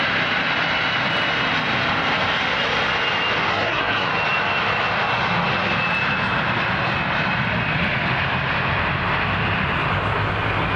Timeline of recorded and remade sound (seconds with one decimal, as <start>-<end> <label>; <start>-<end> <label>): 0.0-3.5 recorded; 3.5-4.1 remade; 4.1-10.8 recorded